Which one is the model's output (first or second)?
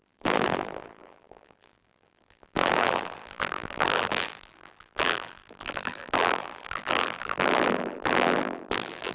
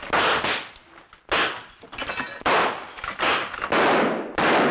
first